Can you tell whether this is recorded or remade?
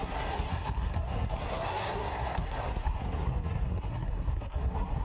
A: remade